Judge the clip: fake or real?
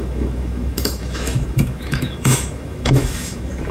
fake